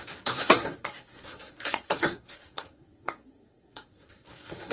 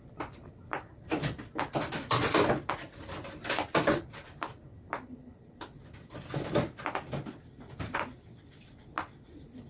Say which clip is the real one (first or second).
second